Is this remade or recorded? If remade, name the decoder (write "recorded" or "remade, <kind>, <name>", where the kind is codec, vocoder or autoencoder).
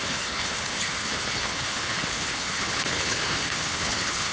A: remade, codec, HILCodec